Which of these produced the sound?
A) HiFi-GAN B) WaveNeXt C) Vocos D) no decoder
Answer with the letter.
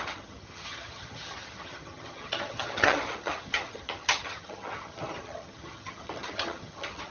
A